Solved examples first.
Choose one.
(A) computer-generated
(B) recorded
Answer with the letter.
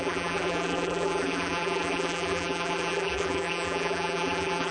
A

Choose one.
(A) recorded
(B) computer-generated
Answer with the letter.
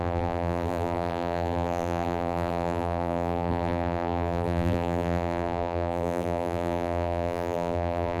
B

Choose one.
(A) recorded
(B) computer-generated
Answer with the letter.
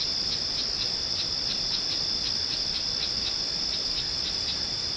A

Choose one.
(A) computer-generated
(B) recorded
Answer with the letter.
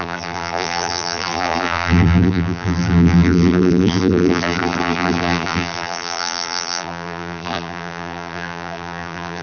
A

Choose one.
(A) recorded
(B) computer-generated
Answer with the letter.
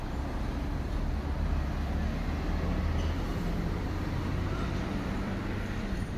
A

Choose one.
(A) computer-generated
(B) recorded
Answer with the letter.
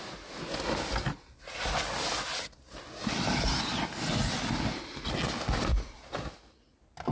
B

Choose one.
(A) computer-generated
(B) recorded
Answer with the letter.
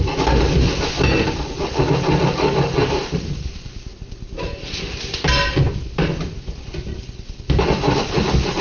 B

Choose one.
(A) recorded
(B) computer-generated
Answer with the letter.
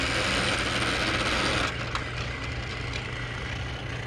A